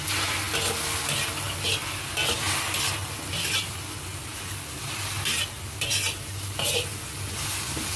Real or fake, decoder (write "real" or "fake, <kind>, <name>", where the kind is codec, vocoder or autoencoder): real